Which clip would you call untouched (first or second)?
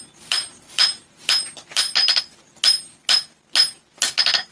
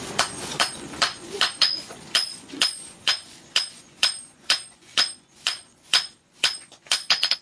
first